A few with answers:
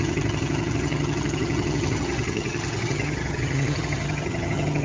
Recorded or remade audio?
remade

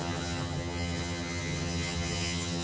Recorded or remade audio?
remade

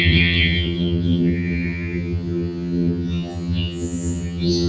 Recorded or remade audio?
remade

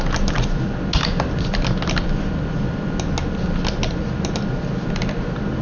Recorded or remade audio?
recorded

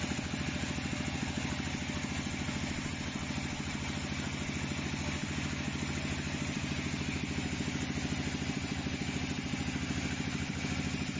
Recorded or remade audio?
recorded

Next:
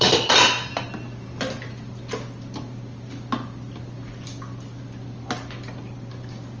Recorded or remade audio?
recorded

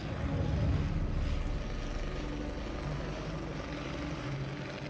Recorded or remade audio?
recorded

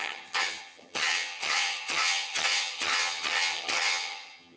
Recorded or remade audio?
remade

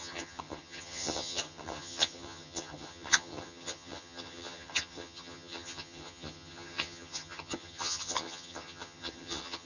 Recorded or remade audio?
remade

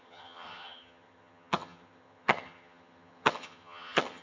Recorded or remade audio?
remade